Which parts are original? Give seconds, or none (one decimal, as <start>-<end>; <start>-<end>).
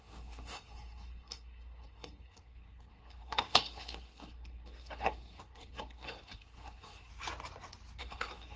7.1-8.0